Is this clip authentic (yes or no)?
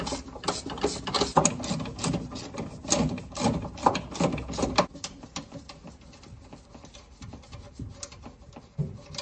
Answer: yes